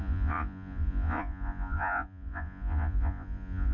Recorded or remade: remade